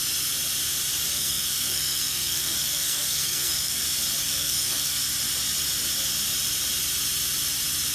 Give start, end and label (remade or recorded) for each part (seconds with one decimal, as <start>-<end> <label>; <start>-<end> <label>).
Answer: 0.0-1.1 recorded; 1.1-3.8 remade; 3.8-4.2 recorded; 4.2-5.0 remade; 5.0-7.9 recorded